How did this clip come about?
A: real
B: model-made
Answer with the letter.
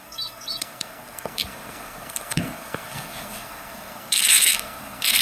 B